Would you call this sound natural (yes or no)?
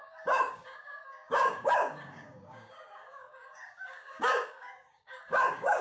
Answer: no